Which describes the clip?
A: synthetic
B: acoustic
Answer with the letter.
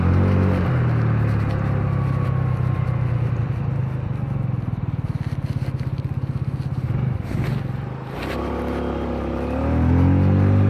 B